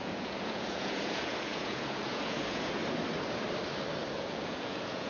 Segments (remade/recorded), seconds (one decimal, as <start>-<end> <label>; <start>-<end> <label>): 0.0-2.8 remade; 2.8-4.1 recorded; 4.1-5.1 remade

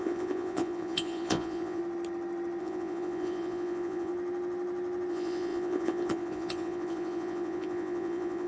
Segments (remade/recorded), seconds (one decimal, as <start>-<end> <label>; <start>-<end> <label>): 0.0-1.8 remade; 1.8-2.6 recorded; 2.6-4.1 remade; 4.1-5.1 recorded; 5.1-8.5 remade

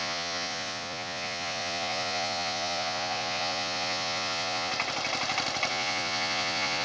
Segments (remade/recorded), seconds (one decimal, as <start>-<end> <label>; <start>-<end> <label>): 0.0-4.7 remade; 4.7-5.7 recorded; 5.7-6.8 remade

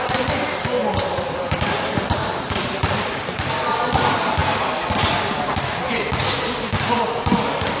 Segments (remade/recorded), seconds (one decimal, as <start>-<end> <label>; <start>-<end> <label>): 0.0-7.8 recorded

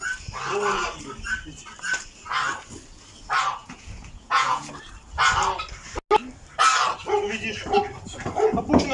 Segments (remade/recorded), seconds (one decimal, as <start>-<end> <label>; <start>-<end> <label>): 0.0-3.6 recorded; 3.6-4.7 remade; 4.7-8.9 recorded